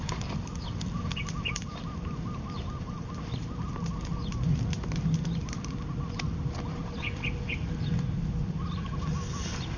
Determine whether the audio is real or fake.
real